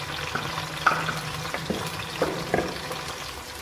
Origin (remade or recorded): recorded